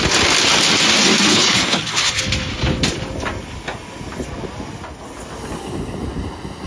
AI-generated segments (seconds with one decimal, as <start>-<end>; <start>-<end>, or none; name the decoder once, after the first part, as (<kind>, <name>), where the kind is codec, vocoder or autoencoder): 1.3-2.2 (codec, HILCodec)